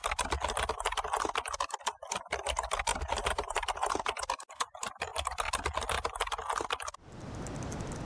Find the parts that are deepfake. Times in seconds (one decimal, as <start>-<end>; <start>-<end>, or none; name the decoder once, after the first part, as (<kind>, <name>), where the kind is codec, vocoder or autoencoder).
2.9-5.5 (vocoder, BigVGAN v2)